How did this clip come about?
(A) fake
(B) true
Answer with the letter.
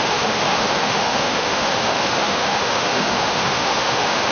A